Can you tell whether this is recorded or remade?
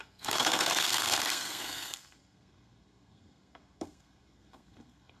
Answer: remade